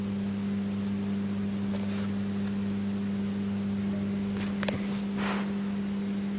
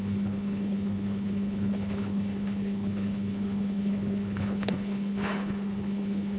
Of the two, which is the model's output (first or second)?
second